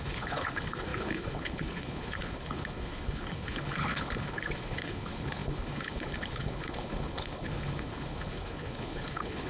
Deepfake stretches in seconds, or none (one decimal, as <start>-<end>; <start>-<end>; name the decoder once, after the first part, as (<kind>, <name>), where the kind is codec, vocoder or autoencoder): 0.0-9.5 (codec, HILCodec)